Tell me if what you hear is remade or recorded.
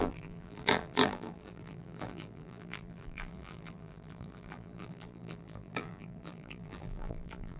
remade